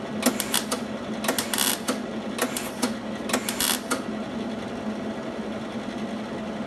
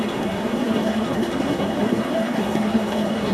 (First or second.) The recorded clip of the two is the first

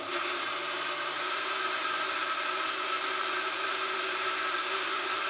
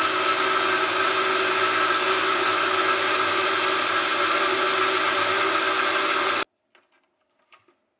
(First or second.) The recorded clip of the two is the second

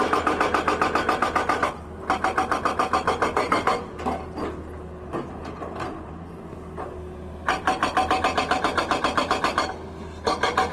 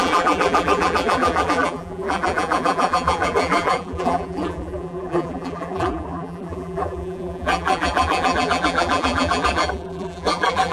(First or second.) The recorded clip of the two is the first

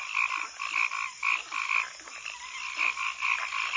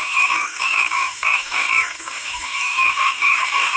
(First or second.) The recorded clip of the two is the first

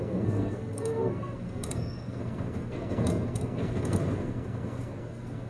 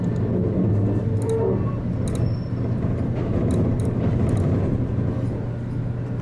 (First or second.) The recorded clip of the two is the second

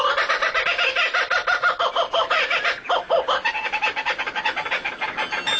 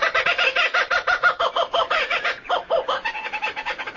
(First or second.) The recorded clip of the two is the first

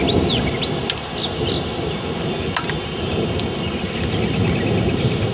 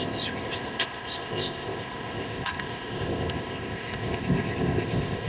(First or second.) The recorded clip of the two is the first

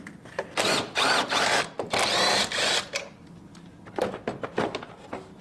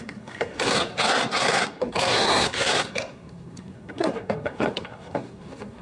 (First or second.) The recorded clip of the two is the first